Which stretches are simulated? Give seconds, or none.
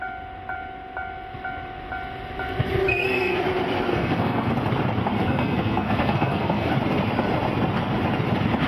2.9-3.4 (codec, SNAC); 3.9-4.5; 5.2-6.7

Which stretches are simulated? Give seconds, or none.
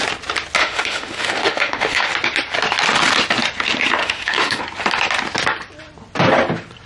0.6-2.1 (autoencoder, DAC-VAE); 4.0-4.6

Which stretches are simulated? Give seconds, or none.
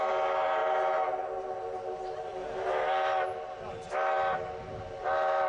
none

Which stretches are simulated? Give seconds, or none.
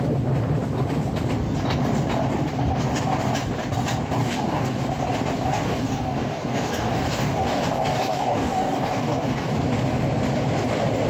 4.2-4.8 (codec, DAC); 5.5-9.5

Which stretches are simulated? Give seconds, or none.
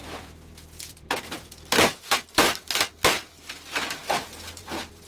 0.0-4.0 (vocoder, BigVGAN v2); 4.6-5.1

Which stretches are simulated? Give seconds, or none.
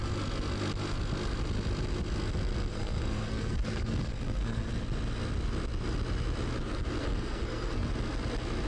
2.7-4.7 (codec, SNAC); 7.0-7.9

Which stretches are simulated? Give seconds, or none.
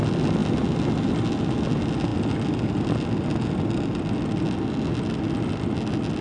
none